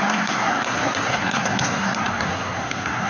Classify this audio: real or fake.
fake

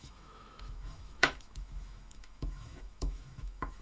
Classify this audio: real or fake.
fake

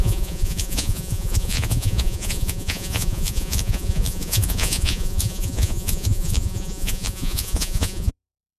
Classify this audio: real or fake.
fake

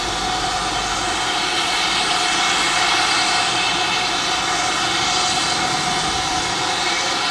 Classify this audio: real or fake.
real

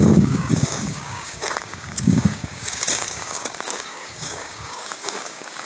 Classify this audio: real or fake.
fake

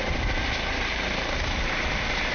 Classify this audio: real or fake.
real